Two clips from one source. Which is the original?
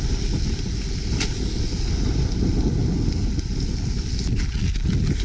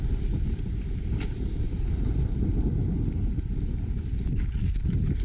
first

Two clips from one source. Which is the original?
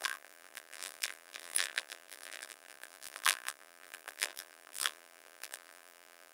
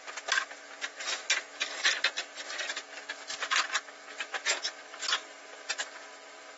second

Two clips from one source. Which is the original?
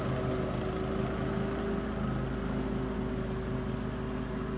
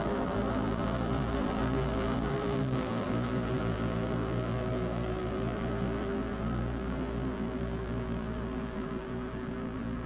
first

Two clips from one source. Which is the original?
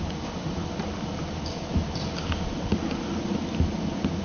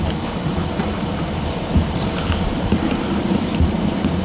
first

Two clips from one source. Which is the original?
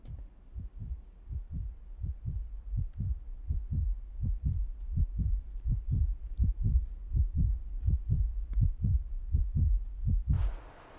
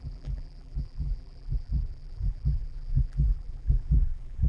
first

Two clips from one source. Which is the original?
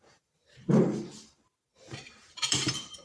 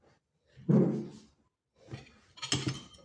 second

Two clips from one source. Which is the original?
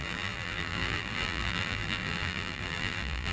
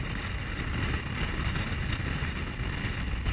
second